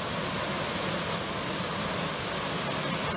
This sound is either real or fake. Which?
real